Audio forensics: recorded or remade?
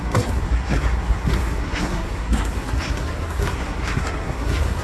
remade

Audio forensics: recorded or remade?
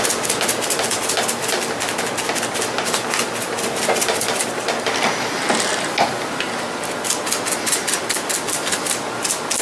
recorded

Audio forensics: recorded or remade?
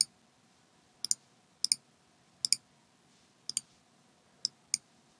recorded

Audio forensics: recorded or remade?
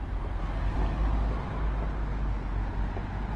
recorded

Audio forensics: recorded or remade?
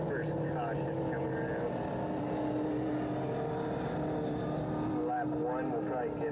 recorded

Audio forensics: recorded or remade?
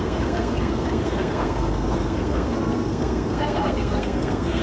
remade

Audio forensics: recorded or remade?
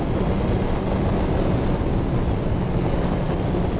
recorded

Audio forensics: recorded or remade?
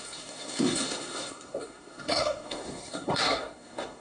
remade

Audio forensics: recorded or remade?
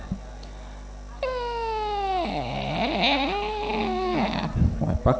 recorded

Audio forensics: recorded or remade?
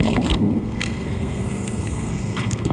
remade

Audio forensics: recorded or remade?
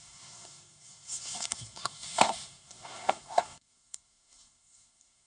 remade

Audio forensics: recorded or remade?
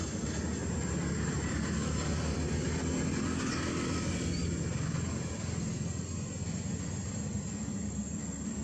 recorded